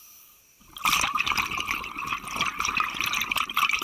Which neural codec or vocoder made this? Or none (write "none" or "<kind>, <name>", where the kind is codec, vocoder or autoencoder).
vocoder, BigVGAN v2